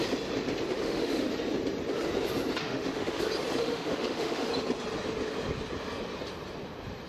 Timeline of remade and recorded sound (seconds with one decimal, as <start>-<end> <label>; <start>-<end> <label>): 0.0-0.8 recorded; 0.8-1.3 remade; 1.3-2.6 recorded; 2.6-3.2 remade; 3.2-3.6 recorded; 3.6-4.5 remade; 4.5-7.1 recorded